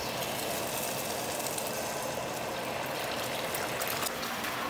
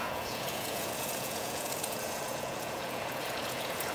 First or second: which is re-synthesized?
second